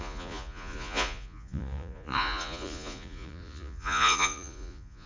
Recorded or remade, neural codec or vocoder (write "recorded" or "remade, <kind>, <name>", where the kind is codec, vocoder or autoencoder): remade, vocoder, Vocos